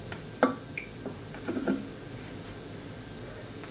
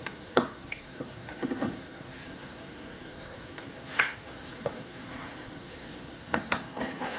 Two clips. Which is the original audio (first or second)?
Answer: first